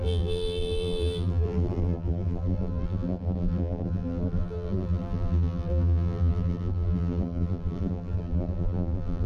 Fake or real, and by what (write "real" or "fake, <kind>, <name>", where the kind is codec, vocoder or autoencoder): fake, vocoder, BigVGAN v2